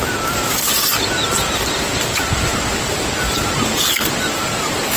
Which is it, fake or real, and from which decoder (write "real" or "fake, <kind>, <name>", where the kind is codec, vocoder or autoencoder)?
real